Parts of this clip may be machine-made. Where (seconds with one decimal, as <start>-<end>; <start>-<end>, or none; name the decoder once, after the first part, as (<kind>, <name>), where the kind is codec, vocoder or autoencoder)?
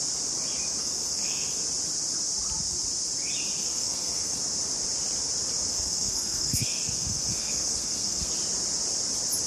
0.8-1.6 (codec, SNAC); 3.6-4.4; 5.7-8.3